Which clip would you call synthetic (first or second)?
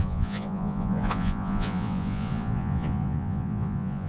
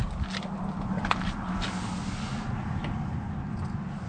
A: first